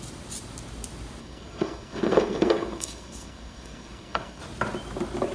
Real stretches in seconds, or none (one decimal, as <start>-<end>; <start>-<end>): 0.0-1.2; 4.4-5.3